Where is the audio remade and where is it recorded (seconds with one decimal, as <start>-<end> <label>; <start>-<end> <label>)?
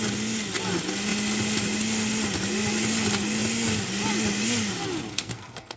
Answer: 0.0-5.1 recorded; 5.1-5.8 remade